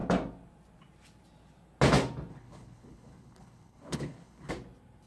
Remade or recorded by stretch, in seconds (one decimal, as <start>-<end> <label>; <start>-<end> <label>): 0.0-2.3 recorded; 2.3-4.5 remade; 4.5-5.1 recorded